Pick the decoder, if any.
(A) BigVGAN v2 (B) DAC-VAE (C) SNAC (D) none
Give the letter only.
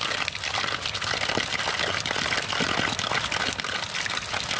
D